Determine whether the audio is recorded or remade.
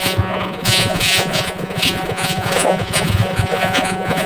remade